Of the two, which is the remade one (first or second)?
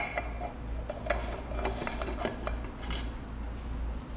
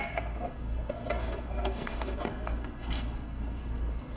second